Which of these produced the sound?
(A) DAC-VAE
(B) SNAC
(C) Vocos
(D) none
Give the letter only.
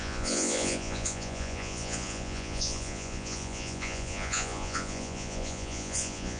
C